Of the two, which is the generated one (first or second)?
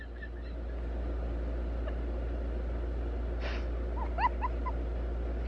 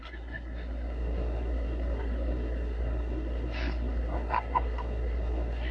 second